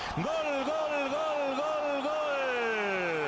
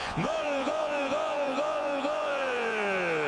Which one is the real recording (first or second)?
first